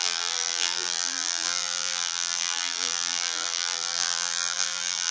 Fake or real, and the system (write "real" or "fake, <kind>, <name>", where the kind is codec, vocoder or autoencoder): fake, vocoder, BigVGAN v2